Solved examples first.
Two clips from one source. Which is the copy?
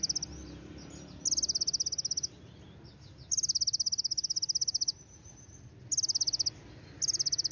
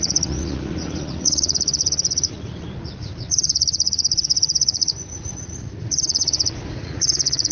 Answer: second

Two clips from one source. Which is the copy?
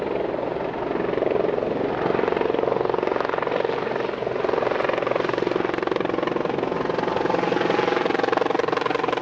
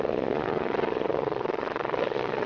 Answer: second